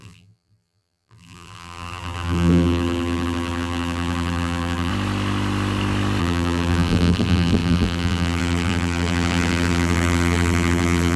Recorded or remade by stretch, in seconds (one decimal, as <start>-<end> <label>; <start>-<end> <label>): 0.0-4.9 remade; 4.9-6.2 recorded; 6.2-11.2 remade

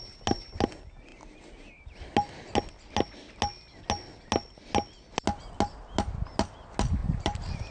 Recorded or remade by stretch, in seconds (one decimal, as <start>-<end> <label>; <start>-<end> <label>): 0.0-7.0 recorded; 7.0-7.7 remade